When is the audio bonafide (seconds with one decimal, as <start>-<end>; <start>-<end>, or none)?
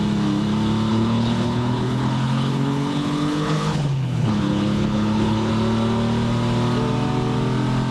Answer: 0.0-0.9; 5.5-7.9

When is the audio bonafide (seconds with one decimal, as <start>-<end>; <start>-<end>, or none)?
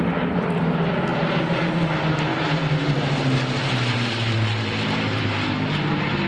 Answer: 0.0-1.1; 1.7-2.3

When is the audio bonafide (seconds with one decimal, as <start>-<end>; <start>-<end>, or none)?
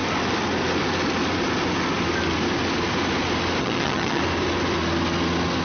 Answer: 0.0-3.6; 4.2-5.6